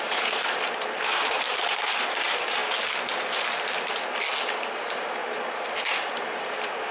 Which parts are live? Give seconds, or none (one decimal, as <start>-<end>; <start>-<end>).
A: 2.6-4.7; 5.2-5.7